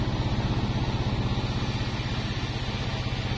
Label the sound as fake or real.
real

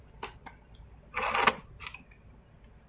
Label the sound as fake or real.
real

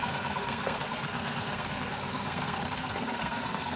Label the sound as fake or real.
fake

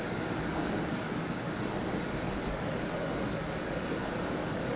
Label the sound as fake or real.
fake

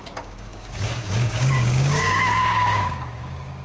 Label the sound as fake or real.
fake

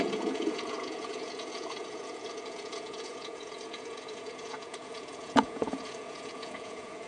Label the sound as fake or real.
fake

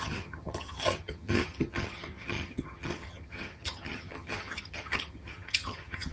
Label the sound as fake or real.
fake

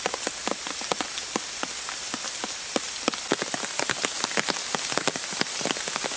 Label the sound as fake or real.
real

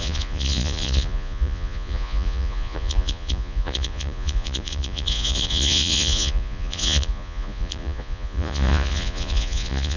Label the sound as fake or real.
fake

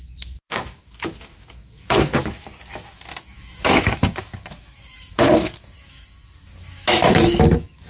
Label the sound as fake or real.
fake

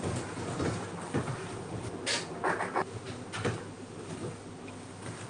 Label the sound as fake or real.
real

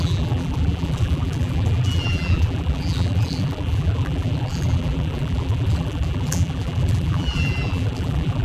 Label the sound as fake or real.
fake